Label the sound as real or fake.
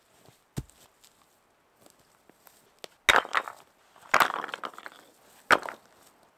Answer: real